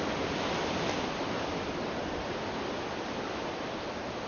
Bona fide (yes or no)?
no